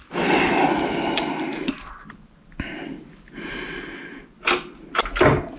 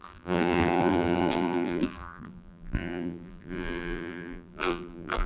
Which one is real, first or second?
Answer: first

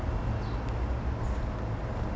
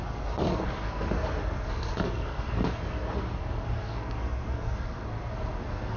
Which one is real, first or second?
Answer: first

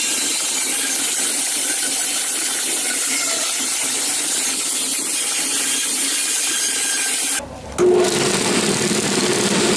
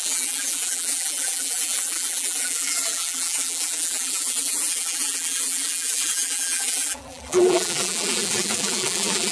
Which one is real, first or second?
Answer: first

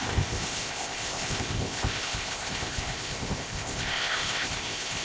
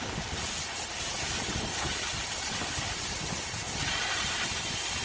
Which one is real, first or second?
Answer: second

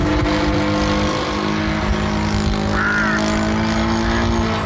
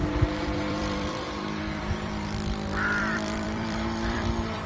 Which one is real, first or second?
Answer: first